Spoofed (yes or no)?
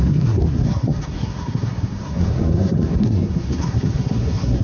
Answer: yes